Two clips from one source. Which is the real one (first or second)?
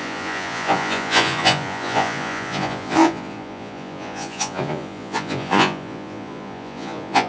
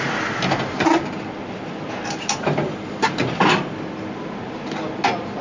second